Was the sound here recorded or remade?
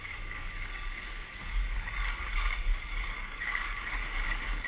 remade